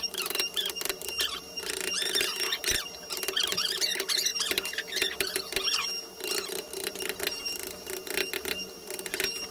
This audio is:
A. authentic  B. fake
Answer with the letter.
B